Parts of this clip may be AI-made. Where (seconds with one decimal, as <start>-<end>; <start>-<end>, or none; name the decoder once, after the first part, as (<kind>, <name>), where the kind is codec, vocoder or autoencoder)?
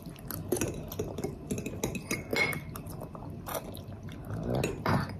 none